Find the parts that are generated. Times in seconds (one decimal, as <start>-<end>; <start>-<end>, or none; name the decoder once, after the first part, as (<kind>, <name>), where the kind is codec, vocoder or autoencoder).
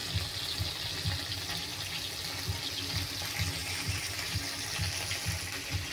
3.6-4.4 (vocoder, BigVGAN v2)